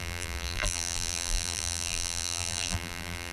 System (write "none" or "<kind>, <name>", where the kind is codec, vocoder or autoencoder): vocoder, BigVGAN v2